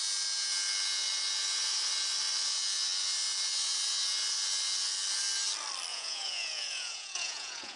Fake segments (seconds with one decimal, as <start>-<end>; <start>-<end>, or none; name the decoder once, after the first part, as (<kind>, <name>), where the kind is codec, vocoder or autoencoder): 5.9-7.8 (vocoder, Vocos)